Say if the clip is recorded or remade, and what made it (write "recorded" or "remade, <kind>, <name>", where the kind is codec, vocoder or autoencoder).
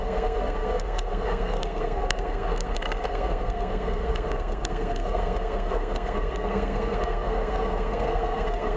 remade, codec, SNAC